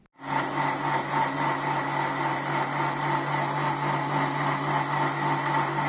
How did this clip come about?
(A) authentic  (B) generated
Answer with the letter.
A